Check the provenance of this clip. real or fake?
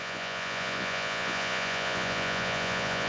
fake